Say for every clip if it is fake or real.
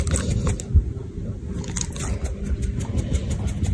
real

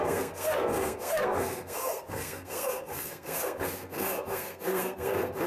fake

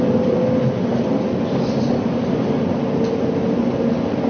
real